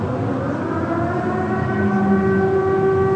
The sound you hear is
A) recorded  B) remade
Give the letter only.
A